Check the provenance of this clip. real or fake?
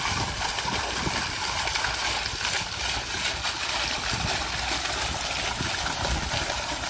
real